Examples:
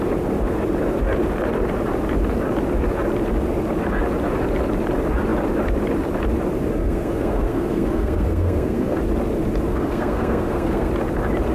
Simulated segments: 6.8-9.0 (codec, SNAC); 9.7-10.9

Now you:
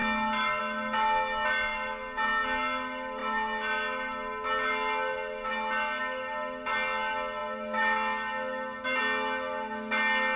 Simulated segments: none

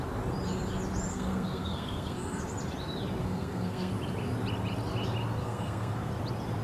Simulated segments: 1.1-2.4 (codec, SNAC); 3.2-3.9; 5.4-6.1

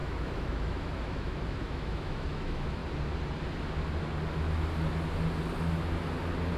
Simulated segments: 0.0-2.8 (autoencoder, DAC-VAE)

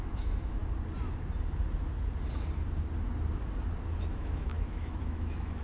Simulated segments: 0.0-0.6 (autoencoder, DAC-VAE); 4.0-5.6

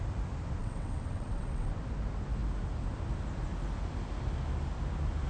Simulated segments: 0.6-1.7 (vocoder, WaveNeXt)